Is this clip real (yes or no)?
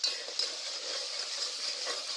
yes